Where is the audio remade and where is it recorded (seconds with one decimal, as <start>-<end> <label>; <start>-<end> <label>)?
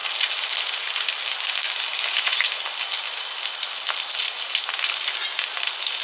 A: 0.0-6.0 recorded